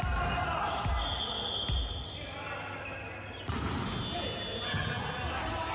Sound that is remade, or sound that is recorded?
recorded